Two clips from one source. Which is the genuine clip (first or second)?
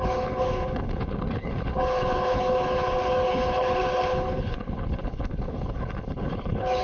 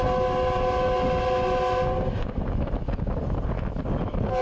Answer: second